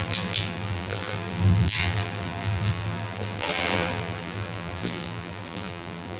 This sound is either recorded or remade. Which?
remade